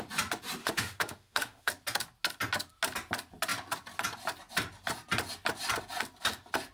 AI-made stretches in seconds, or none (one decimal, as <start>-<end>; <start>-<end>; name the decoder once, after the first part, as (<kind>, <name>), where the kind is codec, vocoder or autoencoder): 0.6-1.7 (autoencoder, DAC-VAE)